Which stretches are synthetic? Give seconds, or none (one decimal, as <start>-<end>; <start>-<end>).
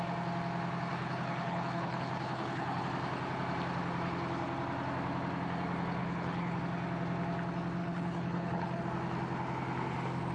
0.9-2.8; 6.0-6.6; 7.8-8.8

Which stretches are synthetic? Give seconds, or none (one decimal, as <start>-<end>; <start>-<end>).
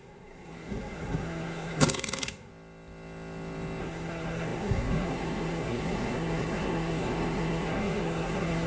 0.0-2.5; 3.8-8.7